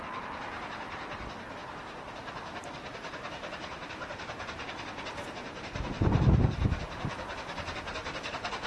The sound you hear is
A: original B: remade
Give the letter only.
A